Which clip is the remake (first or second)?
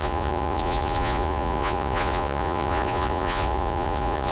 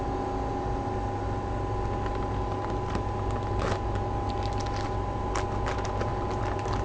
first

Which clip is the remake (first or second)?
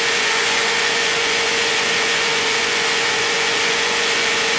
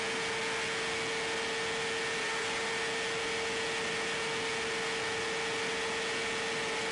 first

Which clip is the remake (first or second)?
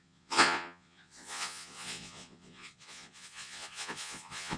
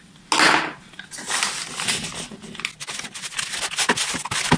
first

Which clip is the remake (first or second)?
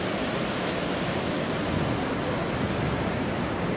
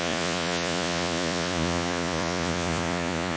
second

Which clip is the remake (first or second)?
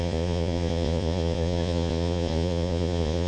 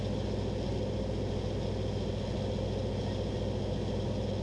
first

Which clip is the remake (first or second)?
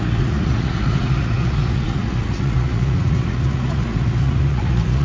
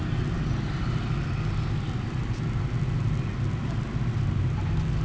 first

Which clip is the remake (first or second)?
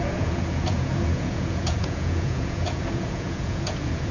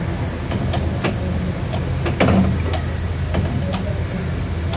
first